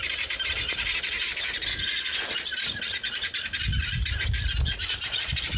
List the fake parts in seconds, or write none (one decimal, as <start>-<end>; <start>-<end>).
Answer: 0.0-1.9; 4.8-5.6